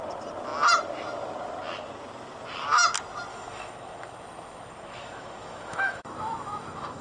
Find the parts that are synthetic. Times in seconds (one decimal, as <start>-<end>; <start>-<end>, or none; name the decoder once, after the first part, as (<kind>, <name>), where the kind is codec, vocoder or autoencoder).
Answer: 3.3-7.0 (autoencoder, DAC-VAE)